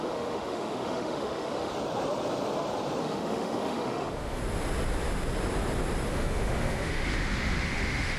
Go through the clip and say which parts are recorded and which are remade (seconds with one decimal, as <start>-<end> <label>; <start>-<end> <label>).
0.0-1.7 remade; 1.7-3.0 recorded; 3.0-4.4 remade; 4.4-6.1 recorded; 6.1-8.2 remade